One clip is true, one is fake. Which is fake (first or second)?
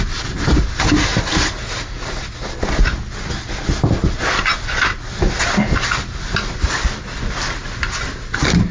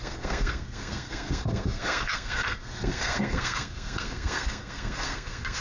second